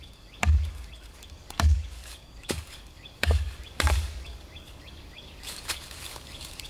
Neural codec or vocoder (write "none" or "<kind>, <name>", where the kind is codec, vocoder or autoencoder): codec, DAC